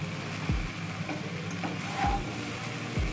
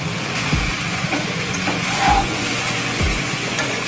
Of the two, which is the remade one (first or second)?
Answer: second